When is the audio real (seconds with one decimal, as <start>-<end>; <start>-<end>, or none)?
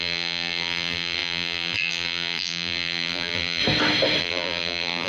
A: 3.6-4.2